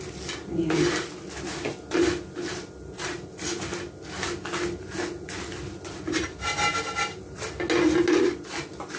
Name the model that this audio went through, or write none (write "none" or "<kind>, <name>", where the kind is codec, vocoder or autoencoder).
none